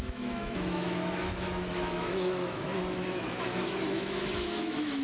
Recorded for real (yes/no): no